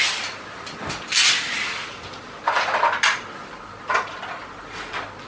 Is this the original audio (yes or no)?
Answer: yes